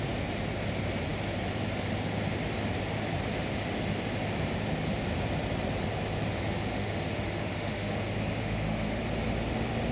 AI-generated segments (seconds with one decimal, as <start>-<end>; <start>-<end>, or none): 6.3-8.0; 8.4-9.0